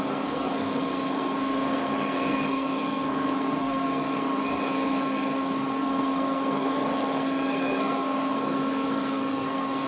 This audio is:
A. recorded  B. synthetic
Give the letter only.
B